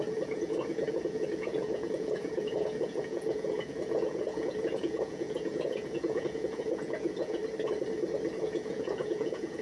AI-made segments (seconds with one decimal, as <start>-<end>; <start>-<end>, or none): 0.0-7.4; 8.4-9.6